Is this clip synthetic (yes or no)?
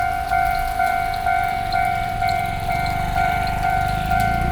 yes